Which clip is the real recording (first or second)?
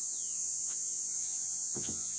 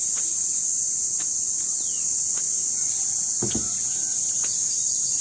second